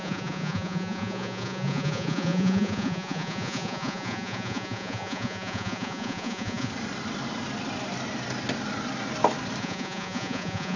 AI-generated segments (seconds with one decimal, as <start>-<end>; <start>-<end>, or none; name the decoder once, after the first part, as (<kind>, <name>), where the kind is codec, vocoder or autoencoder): 0.0-6.7 (vocoder, Vocos); 9.6-10.8